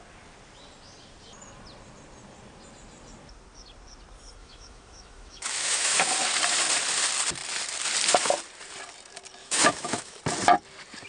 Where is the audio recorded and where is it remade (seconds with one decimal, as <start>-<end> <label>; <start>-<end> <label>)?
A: 0.0-4.4 recorded; 4.4-6.1 remade; 6.1-9.4 recorded; 9.4-10.2 remade; 10.2-11.1 recorded